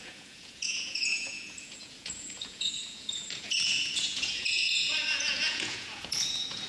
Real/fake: fake